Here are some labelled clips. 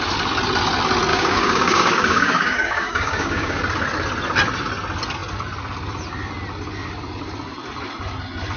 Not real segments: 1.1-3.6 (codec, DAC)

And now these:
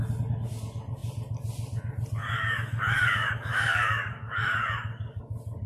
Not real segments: 2.2-5.2 (codec, DAC)